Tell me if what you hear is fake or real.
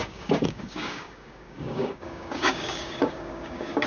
fake